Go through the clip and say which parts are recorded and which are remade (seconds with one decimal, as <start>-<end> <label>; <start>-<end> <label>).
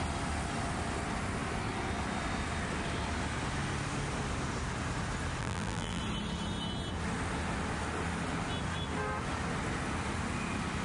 0.0-5.4 recorded; 5.4-6.0 remade; 6.0-10.8 recorded